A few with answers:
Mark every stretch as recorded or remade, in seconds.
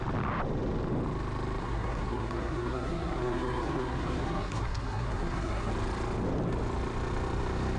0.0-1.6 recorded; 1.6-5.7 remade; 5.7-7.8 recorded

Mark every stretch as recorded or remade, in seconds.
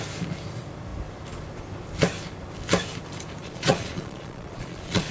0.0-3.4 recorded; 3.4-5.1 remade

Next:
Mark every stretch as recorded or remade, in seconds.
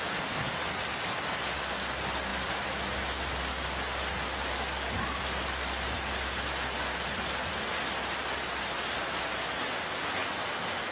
0.0-10.9 recorded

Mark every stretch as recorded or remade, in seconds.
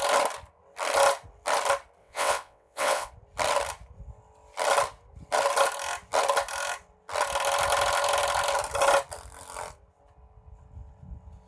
0.0-2.0 recorded; 2.0-3.1 remade; 3.1-11.5 recorded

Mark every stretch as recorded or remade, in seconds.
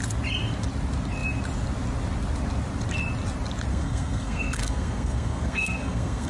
0.0-3.7 recorded; 3.7-6.3 remade